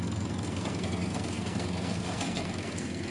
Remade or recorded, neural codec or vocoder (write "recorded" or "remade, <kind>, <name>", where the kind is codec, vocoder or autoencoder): remade, codec, SNAC